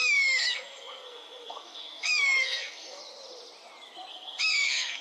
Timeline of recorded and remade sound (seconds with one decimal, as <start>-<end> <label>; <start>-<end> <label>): 0.0-3.0 remade; 3.0-4.1 recorded; 4.1-5.0 remade